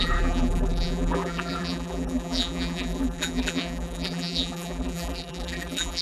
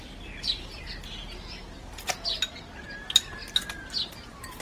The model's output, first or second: first